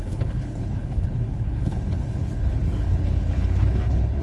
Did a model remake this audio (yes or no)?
yes